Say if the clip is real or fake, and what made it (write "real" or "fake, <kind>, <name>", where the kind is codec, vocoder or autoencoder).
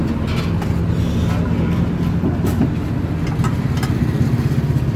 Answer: real